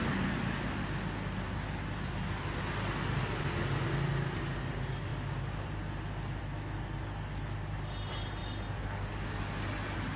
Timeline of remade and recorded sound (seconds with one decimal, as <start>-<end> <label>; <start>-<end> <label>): 0.0-10.2 recorded